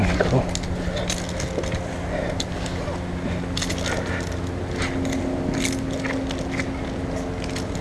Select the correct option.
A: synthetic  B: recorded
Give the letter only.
B